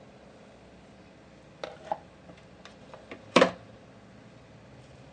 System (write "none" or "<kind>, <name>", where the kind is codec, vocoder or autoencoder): none